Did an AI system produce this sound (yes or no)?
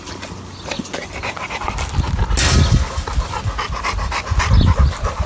no